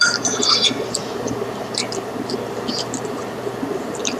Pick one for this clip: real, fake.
fake